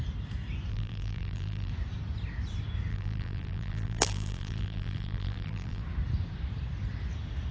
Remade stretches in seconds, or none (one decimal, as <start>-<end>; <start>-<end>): 0.7-1.7; 2.9-5.8